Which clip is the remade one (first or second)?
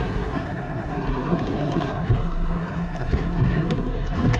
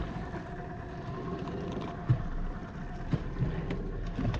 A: first